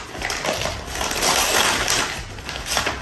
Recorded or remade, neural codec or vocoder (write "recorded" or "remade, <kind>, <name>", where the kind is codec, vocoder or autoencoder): recorded